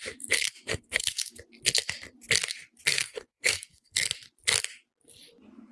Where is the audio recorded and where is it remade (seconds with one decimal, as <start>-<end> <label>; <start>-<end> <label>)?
0.0-0.7 recorded; 0.7-1.3 remade; 1.3-2.9 recorded; 2.9-4.1 remade; 4.1-5.7 recorded